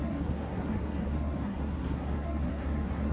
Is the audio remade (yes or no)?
yes